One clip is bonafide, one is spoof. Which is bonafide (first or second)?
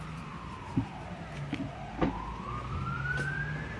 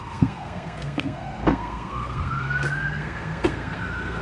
first